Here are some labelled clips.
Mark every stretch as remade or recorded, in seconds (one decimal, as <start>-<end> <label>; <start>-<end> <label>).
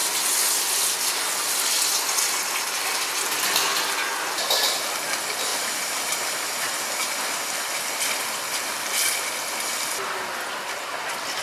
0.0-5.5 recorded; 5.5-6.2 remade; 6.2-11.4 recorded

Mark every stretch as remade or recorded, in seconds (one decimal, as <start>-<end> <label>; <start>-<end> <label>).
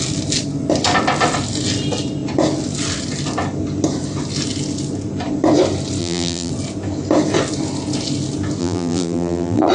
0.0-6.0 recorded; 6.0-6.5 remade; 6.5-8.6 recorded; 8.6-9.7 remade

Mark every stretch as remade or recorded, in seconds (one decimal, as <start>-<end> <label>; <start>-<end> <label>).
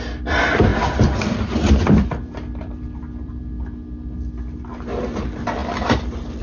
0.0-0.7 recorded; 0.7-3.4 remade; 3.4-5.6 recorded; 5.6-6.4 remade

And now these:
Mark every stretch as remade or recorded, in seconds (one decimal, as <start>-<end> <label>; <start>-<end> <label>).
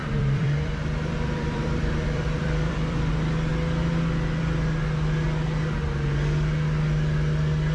0.0-3.1 remade; 3.1-7.7 recorded